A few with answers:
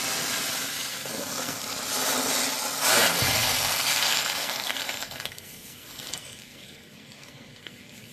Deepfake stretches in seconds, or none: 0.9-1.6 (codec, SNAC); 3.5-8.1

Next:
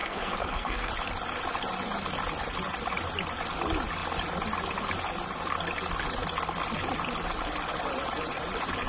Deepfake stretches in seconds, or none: 0.0-0.9 (codec, SNAC)

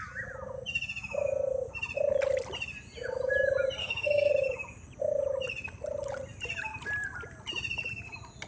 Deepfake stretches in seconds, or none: 3.8-4.3 (codec, SNAC)

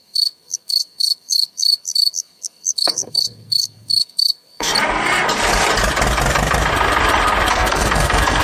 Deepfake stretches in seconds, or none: 0.0-4.7 (codec, SNAC); 7.5-8.4